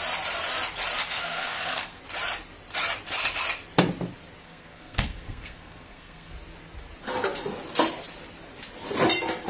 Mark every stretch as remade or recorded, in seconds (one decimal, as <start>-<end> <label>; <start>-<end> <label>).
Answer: 0.0-1.0 recorded; 1.0-2.0 remade; 2.0-4.4 recorded; 4.4-6.3 remade; 6.3-9.5 recorded